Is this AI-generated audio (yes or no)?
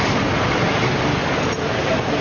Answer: no